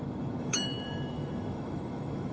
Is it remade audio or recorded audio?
remade